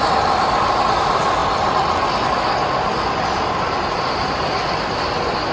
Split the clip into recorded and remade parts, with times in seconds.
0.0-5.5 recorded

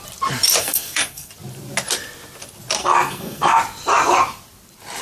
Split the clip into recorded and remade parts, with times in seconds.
0.0-0.6 recorded; 0.6-1.3 remade; 1.3-2.8 recorded; 2.8-3.6 remade; 3.6-5.0 recorded

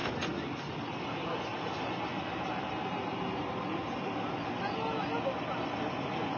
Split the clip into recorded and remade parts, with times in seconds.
0.0-6.4 recorded

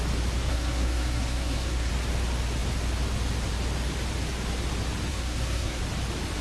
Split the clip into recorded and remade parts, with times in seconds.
0.0-0.5 recorded; 0.5-1.9 remade; 1.9-5.1 recorded; 5.1-5.8 remade; 5.8-6.4 recorded

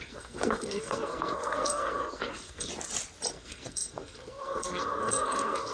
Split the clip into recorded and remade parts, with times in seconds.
0.0-2.7 remade; 2.7-3.3 recorded; 3.3-5.7 remade